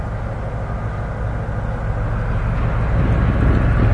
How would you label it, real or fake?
real